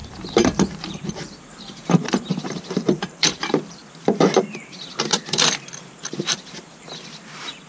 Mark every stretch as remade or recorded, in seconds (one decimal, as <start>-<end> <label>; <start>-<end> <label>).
0.0-3.8 remade; 3.8-4.5 recorded; 4.5-7.7 remade